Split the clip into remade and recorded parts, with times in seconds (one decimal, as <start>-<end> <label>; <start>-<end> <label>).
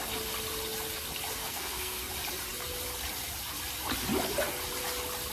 0.0-1.4 recorded; 1.4-2.1 remade; 2.1-5.3 recorded